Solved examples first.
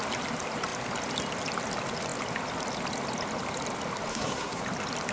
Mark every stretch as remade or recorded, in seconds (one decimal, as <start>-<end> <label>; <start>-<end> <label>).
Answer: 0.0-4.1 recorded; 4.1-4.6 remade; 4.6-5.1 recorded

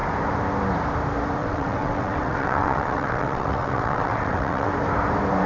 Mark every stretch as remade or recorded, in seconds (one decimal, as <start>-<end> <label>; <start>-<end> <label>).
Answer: 0.0-1.4 recorded; 1.4-4.7 remade; 4.7-5.5 recorded

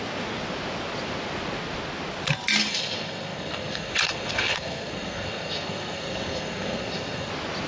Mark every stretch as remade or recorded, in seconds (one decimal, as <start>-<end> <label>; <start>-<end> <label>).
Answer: 0.0-2.7 recorded; 2.7-7.3 remade; 7.3-7.7 recorded

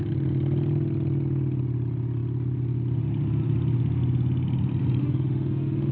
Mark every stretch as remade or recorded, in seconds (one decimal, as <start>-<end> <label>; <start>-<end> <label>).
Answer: 0.0-5.0 recorded; 5.0-5.9 remade

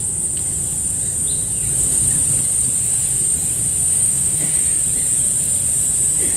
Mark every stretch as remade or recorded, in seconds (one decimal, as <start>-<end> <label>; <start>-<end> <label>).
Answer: 0.0-3.9 recorded; 3.9-4.6 remade; 4.6-6.4 recorded